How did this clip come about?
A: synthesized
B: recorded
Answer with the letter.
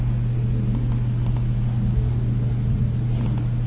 B